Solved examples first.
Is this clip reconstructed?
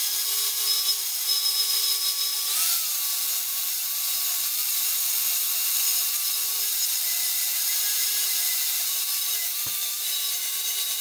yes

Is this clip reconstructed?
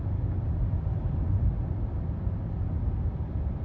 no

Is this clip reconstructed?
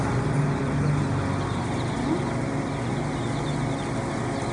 no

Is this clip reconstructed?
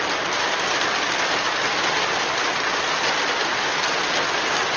no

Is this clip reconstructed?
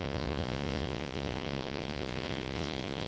yes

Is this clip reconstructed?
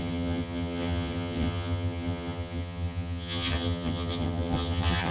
yes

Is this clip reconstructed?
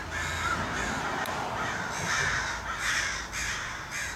no